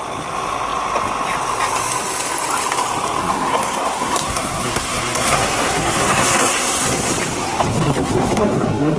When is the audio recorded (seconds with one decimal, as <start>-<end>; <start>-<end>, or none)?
0.0-3.2; 7.1-7.7